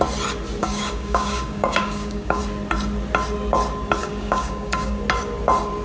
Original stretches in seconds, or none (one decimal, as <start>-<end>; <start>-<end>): 0.0-0.6; 2.4-4.0; 5.0-5.8